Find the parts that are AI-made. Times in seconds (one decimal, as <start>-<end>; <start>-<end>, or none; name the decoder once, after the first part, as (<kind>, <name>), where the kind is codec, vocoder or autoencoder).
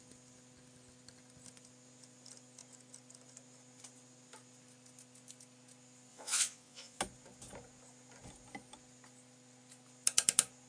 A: 6.1-7.0 (vocoder, Vocos)